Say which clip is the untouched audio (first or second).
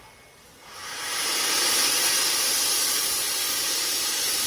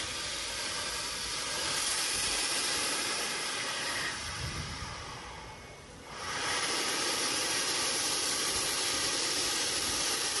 first